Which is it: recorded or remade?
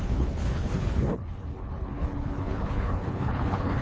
remade